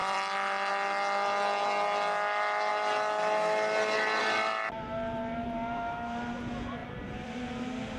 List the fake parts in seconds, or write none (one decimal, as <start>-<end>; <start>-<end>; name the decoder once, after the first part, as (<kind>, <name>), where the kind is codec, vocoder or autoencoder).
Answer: 0.0-0.7 (vocoder, BigVGAN v2); 6.8-7.4